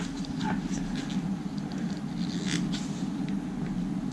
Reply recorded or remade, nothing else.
recorded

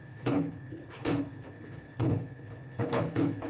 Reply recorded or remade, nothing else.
remade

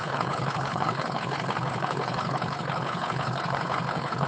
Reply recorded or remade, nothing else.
remade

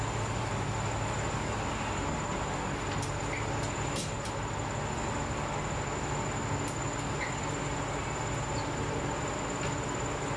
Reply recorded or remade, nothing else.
recorded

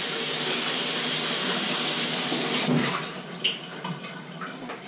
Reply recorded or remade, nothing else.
recorded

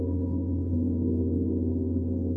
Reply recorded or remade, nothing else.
remade